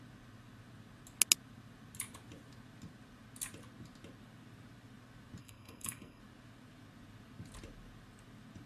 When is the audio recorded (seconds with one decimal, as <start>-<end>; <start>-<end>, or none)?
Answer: 0.0-5.4; 6.2-8.7

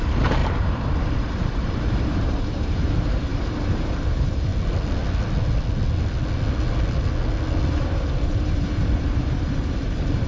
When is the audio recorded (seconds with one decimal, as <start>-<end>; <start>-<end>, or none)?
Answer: 4.5-7.7